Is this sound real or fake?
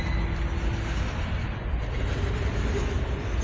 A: real